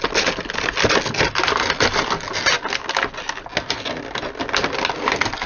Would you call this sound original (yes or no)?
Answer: yes